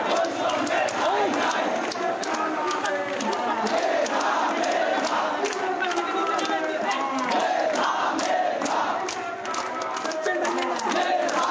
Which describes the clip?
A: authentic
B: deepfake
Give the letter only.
A